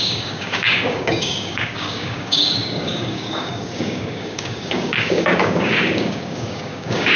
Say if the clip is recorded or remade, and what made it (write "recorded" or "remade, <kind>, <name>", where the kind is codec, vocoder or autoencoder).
remade, codec, DAC